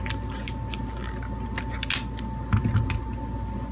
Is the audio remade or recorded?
recorded